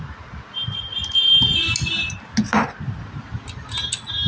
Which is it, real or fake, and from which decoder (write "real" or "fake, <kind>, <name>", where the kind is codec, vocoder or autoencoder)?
real